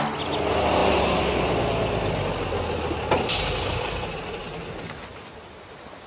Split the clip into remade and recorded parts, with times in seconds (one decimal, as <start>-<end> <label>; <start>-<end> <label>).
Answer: 0.0-6.1 recorded